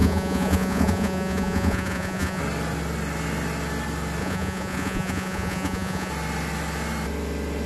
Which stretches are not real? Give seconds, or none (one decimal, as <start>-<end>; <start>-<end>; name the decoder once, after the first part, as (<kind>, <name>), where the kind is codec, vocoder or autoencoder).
0.0-2.4 (vocoder, Vocos); 4.2-6.1